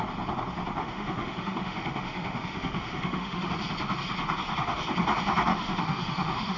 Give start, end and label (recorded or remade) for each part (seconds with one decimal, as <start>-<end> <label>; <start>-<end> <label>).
0.0-0.8 recorded; 0.8-3.5 remade; 3.5-5.5 recorded; 5.5-6.6 remade